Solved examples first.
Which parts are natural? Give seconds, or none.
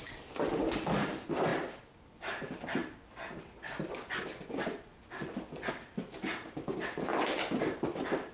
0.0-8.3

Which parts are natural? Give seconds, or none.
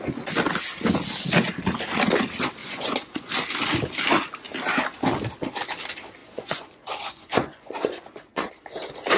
0.0-2.6; 3.3-6.2; 8.5-9.2